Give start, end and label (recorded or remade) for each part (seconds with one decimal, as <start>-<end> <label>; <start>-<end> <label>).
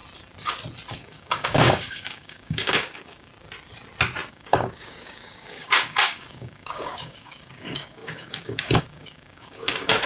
0.0-0.9 recorded; 0.9-3.3 remade; 3.3-4.3 recorded; 4.3-10.1 remade